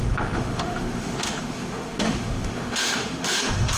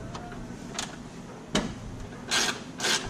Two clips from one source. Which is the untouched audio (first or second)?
second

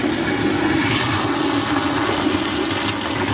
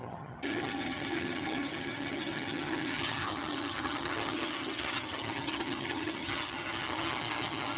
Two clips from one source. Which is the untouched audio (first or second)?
first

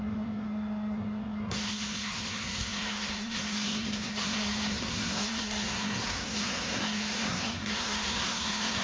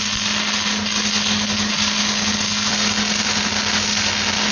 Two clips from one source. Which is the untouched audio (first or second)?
second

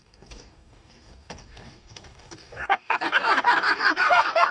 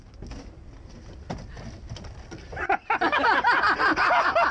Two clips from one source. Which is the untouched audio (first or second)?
second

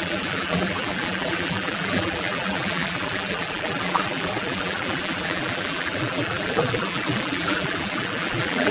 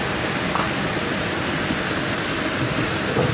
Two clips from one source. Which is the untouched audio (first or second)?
second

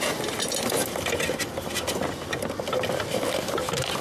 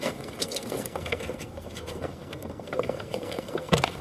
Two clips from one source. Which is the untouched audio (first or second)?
first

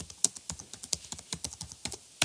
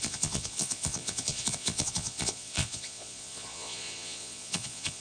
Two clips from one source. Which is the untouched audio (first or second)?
first